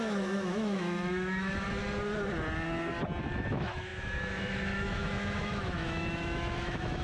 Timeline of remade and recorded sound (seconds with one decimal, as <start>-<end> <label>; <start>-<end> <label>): 0.0-1.8 remade; 1.8-3.2 recorded; 3.2-7.0 remade